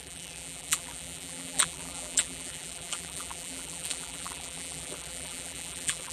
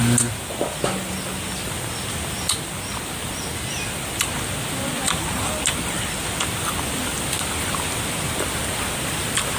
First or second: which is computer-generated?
first